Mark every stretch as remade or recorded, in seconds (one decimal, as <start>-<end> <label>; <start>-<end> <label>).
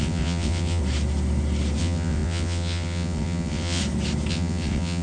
0.0-0.8 remade; 0.8-1.8 recorded; 1.8-3.8 remade; 3.8-4.3 recorded; 4.3-5.0 remade